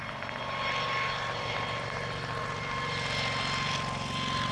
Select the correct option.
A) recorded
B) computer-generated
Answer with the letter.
A